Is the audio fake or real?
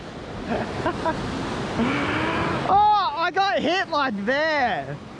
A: real